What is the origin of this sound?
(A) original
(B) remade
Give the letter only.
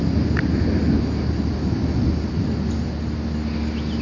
A